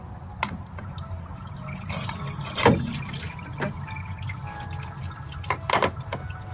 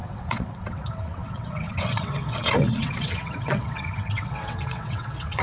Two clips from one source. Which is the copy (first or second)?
second